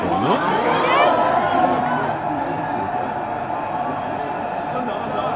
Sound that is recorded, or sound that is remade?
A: recorded